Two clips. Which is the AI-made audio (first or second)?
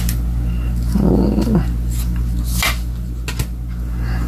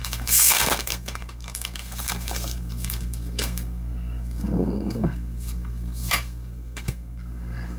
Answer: second